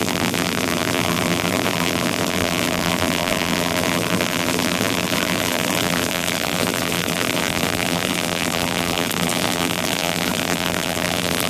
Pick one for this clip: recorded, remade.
remade